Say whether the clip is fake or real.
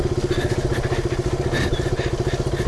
real